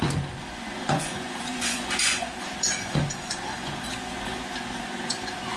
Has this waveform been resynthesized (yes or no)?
yes